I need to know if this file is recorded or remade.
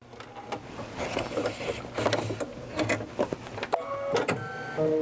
recorded